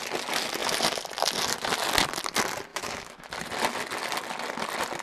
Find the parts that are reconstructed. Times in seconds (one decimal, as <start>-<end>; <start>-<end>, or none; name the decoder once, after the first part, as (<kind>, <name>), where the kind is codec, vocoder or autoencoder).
2.7-3.3 (autoencoder, DAC-VAE)